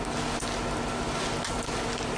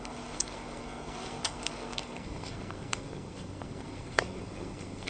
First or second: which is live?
first